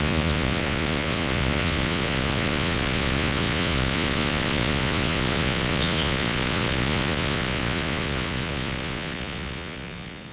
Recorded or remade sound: remade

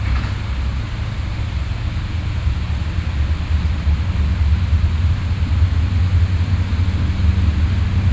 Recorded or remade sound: recorded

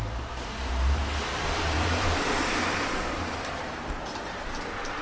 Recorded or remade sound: remade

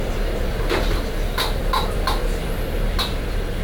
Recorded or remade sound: remade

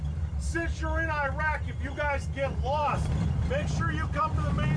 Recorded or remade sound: recorded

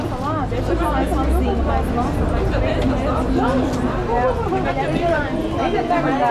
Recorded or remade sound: recorded